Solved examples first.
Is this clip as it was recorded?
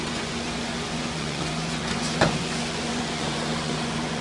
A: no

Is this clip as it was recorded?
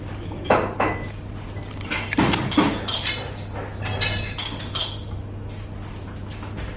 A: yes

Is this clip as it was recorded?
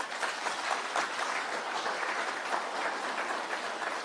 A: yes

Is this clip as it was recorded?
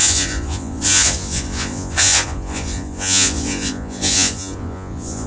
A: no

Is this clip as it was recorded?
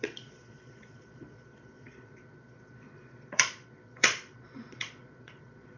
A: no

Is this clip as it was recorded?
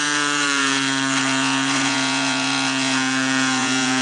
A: no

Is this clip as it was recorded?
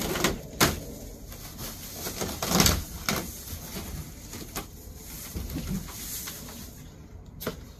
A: yes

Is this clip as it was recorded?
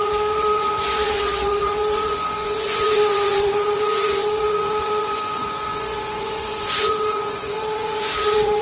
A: no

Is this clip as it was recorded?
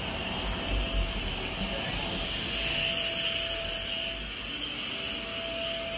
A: yes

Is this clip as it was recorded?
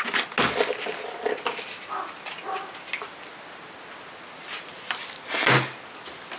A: yes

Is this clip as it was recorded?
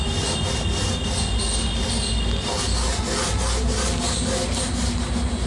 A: yes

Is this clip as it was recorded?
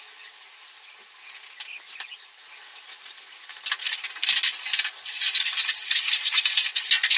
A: yes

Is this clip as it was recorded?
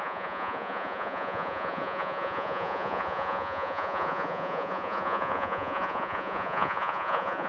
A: no